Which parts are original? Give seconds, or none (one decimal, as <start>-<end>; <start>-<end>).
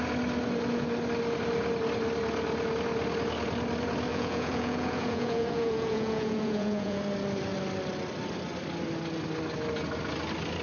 0.0-4.1; 7.0-10.6